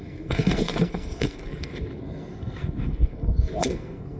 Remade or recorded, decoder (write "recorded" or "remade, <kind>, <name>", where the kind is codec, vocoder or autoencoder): remade, codec, SNAC